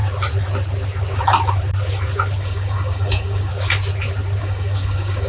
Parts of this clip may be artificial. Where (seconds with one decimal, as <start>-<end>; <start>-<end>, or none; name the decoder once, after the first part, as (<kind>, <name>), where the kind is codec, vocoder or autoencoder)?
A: 2.4-3.5 (codec, DAC); 4.4-5.3